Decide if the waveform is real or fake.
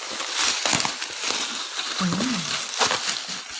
real